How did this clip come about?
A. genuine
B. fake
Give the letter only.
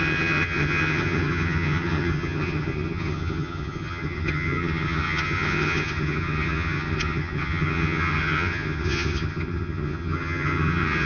B